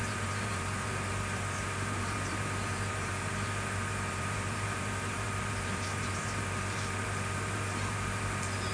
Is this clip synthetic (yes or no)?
yes